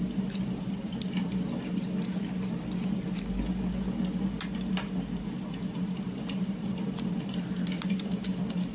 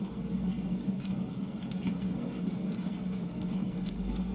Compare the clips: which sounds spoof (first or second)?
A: second